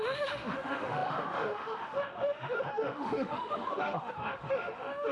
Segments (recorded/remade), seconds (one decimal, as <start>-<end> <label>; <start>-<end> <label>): 0.0-5.1 remade